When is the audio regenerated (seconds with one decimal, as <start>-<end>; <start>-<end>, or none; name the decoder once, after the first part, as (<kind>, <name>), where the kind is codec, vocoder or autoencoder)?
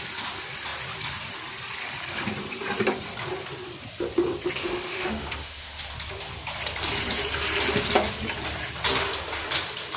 4.6-5.8 (autoencoder, DAC-VAE)